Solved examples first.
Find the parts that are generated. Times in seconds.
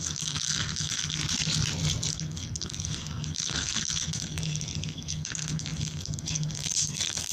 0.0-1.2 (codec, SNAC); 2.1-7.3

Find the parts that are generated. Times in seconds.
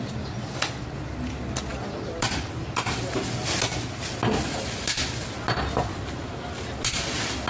none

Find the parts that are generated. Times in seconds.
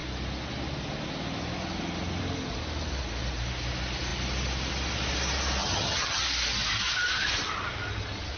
5.6-6.2 (vocoder, HiFi-GAN)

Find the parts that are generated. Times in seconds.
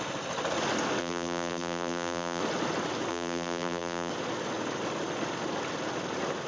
1.0-2.4 (vocoder, BigVGAN v2); 3.1-4.1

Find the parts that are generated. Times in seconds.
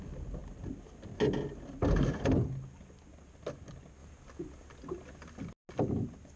none